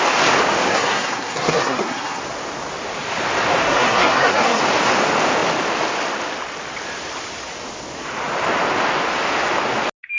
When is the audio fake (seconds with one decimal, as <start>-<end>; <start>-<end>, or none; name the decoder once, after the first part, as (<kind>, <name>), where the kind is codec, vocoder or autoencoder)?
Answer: 0.7-2.2 (codec, SNAC); 3.6-4.6